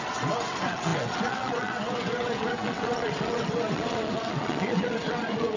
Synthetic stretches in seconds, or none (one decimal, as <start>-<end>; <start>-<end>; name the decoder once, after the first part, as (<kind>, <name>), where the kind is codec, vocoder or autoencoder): 0.0-5.6 (vocoder, WaveNeXt)